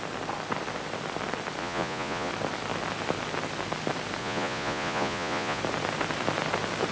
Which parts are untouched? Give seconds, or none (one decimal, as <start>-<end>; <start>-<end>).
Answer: 0.0-1.6; 2.3-4.2; 5.6-6.9